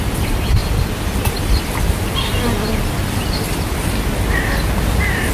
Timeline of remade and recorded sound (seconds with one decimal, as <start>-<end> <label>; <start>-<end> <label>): 0.0-5.3 recorded